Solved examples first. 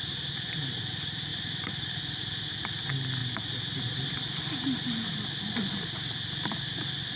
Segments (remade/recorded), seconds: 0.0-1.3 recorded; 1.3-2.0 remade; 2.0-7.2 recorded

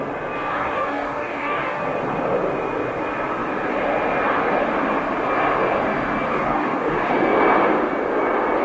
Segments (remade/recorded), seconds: 0.0-0.5 recorded; 0.5-1.8 remade; 1.8-6.3 recorded; 6.3-7.1 remade; 7.1-8.6 recorded

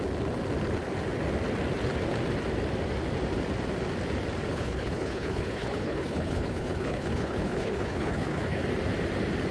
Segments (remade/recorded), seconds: 0.0-4.5 recorded; 4.5-8.6 remade; 8.6-9.5 recorded

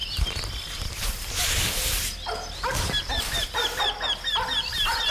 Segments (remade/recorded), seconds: 0.0-5.1 recorded